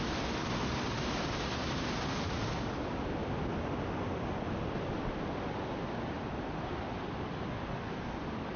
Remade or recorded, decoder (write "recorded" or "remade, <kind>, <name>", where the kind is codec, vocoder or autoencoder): recorded